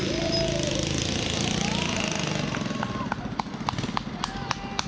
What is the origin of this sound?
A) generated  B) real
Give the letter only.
B